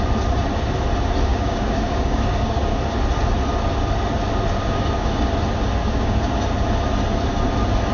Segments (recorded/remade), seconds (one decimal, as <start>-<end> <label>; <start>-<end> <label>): 0.0-1.3 recorded; 1.3-2.8 remade; 2.8-4.6 recorded; 4.6-5.3 remade; 5.3-5.8 recorded; 5.8-6.4 remade; 6.4-7.9 recorded